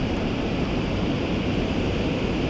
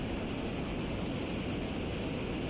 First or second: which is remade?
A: first